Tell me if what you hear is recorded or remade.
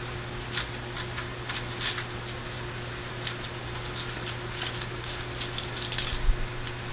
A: recorded